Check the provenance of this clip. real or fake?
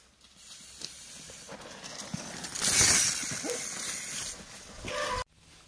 real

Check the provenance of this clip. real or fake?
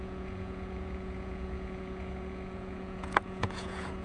fake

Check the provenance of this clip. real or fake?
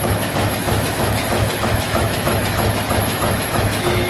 fake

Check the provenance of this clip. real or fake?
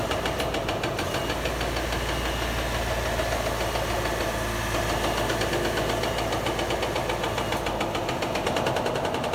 real